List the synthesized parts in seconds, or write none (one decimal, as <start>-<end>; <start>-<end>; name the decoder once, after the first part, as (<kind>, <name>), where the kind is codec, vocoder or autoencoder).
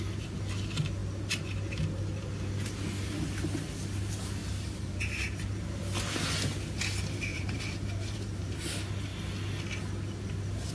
4.4-5.8 (vocoder, BigVGAN v2); 7.3-8.6